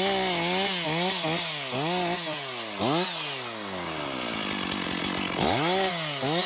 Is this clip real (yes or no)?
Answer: yes